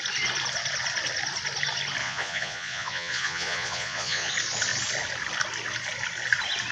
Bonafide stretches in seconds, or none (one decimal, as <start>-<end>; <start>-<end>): 0.0-2.0; 4.3-6.7